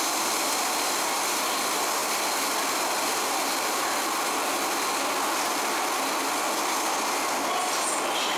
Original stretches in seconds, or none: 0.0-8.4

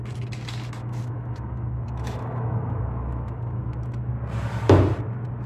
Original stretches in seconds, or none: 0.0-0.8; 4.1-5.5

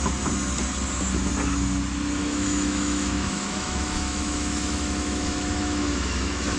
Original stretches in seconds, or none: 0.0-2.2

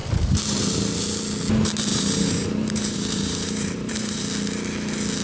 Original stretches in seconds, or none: 0.0-1.9; 4.2-5.2

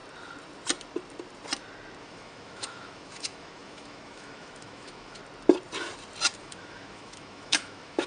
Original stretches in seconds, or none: 0.0-2.0; 5.2-6.4